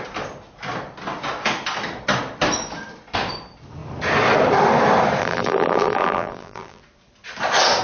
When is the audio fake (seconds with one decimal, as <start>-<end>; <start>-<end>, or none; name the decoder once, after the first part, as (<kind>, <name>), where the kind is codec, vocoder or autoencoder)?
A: 5.2-6.8 (vocoder, BigVGAN v2)